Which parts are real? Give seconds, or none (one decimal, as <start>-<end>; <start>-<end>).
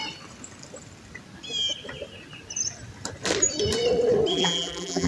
0.0-4.3